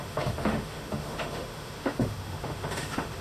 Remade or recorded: remade